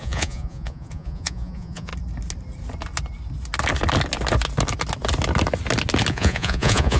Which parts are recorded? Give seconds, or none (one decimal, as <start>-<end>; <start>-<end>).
1.9-6.1